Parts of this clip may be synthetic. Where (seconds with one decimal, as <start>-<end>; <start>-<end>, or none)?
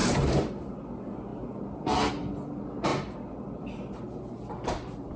none